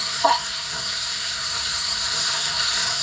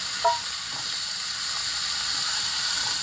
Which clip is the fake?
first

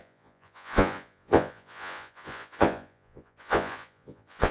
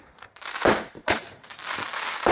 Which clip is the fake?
first